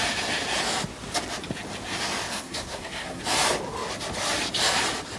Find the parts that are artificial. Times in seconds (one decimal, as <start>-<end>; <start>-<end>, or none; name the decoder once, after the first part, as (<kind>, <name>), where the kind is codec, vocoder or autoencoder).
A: 2.3-3.2 (codec, SNAC)